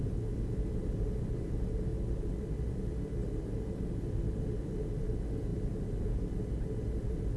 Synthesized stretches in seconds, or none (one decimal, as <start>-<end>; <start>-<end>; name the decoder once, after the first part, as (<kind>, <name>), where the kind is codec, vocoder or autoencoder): 1.9-2.8 (vocoder, BigVGAN v2); 5.5-6.5